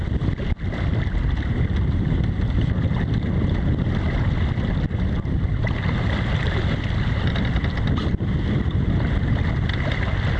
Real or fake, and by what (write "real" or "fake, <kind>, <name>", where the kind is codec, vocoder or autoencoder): real